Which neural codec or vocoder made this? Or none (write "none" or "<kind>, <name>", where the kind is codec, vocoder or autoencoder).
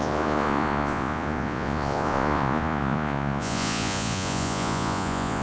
vocoder, Vocos